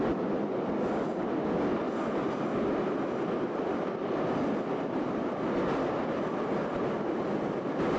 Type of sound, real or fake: real